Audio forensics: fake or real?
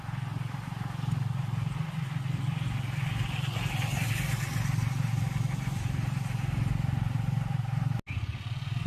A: real